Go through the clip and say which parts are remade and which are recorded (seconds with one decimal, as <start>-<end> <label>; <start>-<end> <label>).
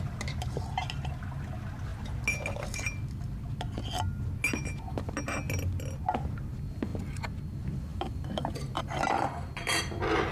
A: 0.0-7.9 recorded; 7.9-8.8 remade; 8.8-10.3 recorded